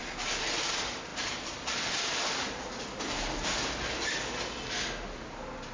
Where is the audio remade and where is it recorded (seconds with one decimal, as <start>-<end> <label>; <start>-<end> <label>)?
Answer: 0.0-1.1 recorded; 1.1-4.1 remade; 4.1-5.7 recorded